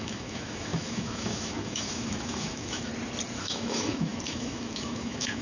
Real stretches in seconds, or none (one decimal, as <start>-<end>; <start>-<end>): 2.9-3.4